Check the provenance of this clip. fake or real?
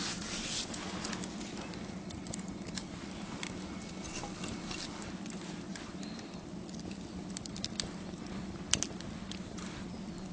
real